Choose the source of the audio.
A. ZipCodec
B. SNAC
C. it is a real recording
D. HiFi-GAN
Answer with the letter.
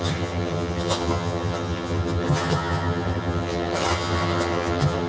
D